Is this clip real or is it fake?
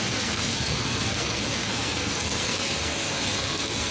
fake